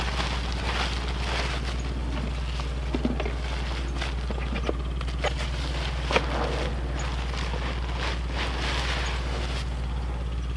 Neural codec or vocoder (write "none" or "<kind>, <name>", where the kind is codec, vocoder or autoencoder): none